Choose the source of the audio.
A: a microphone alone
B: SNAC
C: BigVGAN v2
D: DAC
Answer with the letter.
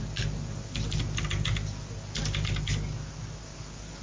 A